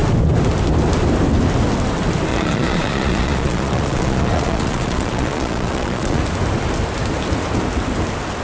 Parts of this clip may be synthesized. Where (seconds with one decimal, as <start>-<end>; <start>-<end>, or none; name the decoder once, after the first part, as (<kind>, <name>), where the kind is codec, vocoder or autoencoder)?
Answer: 2.3-6.2 (vocoder, Vocos)